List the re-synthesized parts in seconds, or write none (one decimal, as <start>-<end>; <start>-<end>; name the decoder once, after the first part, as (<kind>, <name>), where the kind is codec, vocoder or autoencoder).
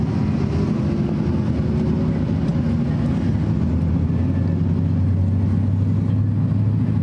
none